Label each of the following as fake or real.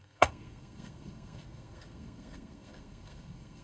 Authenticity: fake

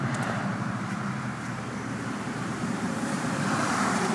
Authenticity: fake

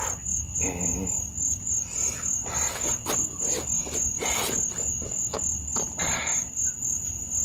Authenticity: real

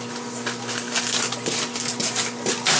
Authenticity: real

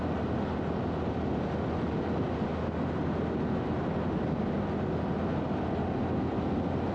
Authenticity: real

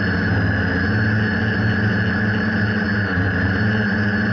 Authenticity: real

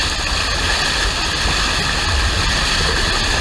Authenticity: real